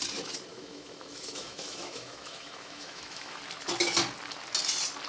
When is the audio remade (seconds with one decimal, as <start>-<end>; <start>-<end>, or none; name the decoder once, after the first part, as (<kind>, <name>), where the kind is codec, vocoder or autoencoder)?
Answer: 0.5-3.4 (autoencoder, DAC-VAE)